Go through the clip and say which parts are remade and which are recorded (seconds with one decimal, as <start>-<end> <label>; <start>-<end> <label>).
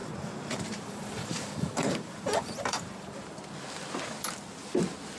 0.0-3.1 remade; 3.1-5.2 recorded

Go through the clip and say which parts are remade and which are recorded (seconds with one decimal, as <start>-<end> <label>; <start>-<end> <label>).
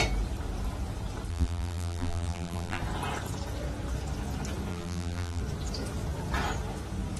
0.0-1.3 recorded; 1.3-2.8 remade; 2.8-4.7 recorded; 4.7-5.4 remade; 5.4-7.2 recorded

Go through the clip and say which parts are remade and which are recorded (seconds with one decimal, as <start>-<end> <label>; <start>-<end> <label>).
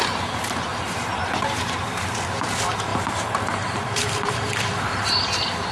0.0-0.7 recorded; 0.7-1.2 remade; 1.2-2.9 recorded; 2.9-5.3 remade; 5.3-5.7 recorded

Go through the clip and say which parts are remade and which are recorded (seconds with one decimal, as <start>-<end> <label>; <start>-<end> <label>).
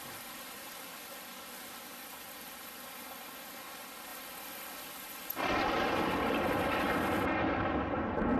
0.0-1.9 recorded; 1.9-3.5 remade; 3.5-4.1 recorded; 4.1-5.3 remade; 5.3-8.4 recorded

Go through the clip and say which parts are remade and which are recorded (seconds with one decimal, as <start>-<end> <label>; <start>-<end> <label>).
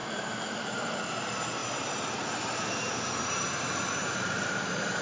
0.0-0.6 remade; 0.6-1.6 recorded; 1.6-4.6 remade; 4.6-5.0 recorded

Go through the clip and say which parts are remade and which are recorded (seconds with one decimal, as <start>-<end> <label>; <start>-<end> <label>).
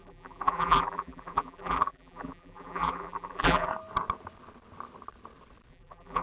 0.0-3.7 remade; 3.7-5.7 recorded; 5.7-6.2 remade